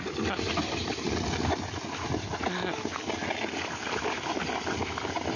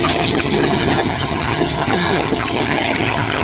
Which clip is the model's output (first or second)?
second